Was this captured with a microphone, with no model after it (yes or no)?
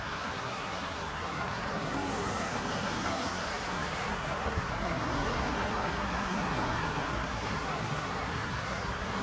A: no